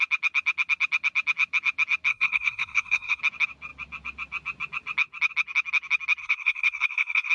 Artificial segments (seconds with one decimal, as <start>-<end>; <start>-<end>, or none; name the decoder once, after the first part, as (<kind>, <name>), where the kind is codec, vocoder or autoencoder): 2.1-3.2 (codec, SNAC); 6.2-7.3